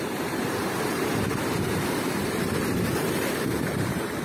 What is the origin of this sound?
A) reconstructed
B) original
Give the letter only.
A